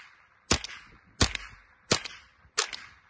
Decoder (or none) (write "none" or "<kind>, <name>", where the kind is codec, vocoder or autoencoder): none